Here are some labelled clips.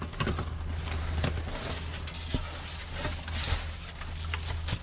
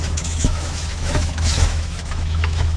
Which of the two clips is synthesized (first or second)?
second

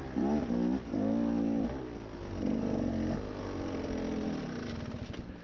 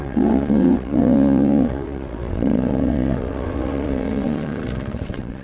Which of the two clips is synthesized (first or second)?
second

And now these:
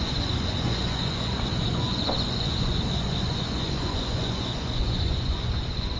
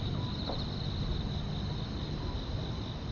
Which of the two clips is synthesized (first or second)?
first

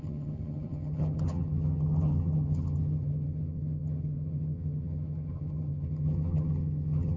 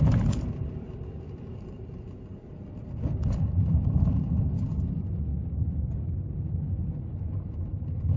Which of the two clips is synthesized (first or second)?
first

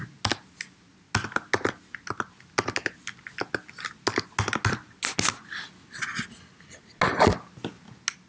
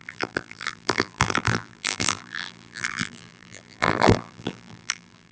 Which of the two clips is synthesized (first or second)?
second